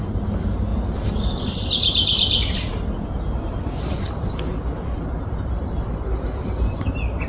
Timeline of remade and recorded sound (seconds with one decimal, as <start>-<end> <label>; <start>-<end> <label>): 0.0-7.3 recorded